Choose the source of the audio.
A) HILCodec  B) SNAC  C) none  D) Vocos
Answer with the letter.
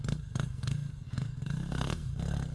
B